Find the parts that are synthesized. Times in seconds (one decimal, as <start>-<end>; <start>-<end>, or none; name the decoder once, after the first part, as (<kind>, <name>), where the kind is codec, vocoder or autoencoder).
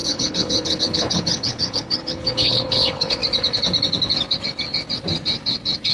0.0-3.2 (codec, HILCodec)